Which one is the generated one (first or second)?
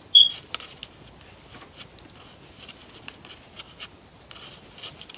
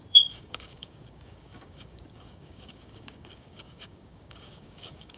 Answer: second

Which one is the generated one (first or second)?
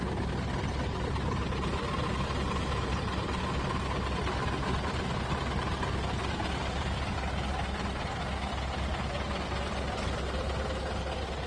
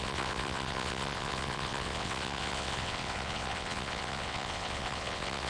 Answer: second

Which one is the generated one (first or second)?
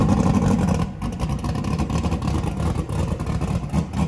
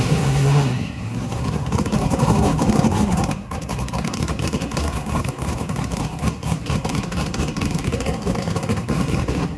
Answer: second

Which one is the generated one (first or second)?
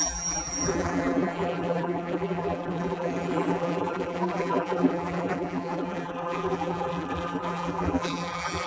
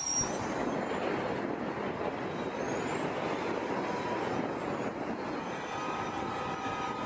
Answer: first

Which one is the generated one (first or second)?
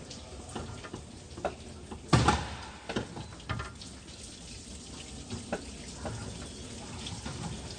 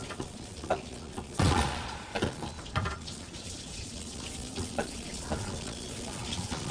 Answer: second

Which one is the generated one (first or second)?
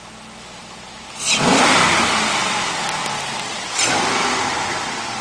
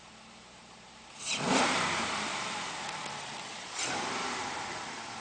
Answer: second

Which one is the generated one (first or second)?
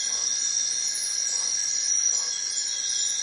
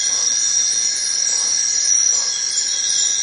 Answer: first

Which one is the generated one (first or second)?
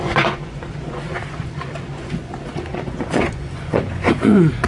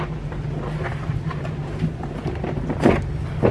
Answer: first